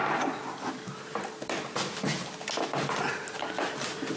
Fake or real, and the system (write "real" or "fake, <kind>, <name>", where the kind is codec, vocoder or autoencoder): real